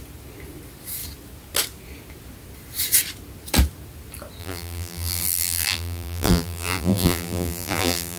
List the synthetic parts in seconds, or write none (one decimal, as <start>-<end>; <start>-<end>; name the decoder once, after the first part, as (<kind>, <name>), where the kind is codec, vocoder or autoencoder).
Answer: 4.4-8.2 (vocoder, BigVGAN v2)